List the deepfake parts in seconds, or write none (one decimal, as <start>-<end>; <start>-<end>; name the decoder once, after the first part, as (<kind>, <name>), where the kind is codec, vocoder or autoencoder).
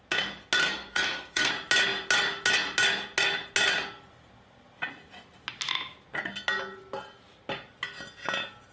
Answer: 0.6-1.5 (codec, SNAC)